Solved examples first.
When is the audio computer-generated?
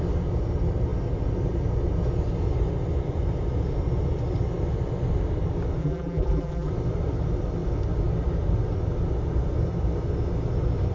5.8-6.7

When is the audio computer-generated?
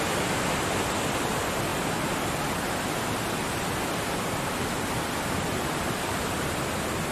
none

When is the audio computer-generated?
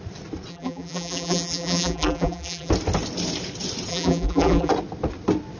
0.5-2.7; 3.9-4.7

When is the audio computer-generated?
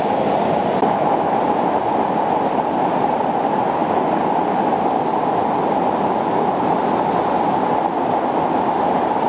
none